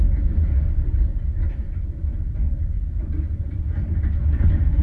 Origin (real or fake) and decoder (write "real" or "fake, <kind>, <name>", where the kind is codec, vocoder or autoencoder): real